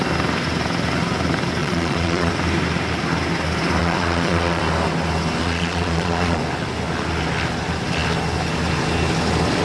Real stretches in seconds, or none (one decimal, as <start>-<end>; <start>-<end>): 0.0-1.6; 2.3-3.8; 4.6-5.4; 6.4-9.6